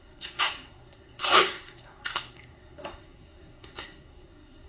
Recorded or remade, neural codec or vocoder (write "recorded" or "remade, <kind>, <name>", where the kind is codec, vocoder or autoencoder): remade, codec, SNAC